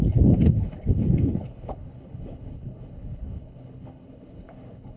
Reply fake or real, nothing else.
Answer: fake